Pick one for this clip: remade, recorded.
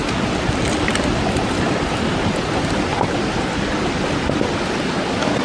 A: recorded